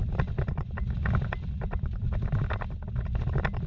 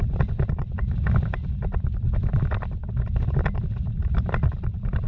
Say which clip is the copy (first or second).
second